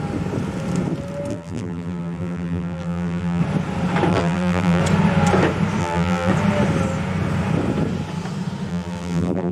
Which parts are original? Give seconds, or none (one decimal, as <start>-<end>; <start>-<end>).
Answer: 0.0-1.3; 3.4-4.1; 4.8-5.8; 6.3-8.7